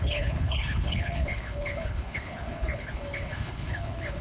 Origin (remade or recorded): remade